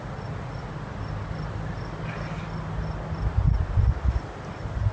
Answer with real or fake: real